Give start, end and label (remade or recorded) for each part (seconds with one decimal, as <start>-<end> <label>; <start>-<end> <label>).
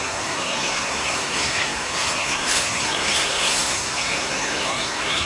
0.0-5.3 remade